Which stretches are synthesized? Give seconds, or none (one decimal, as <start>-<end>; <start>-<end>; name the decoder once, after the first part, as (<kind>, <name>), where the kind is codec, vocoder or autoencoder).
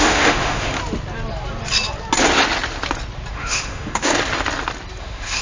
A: 0.0-0.8 (autoencoder, DAC-VAE); 3.3-4.1; 5.0-5.4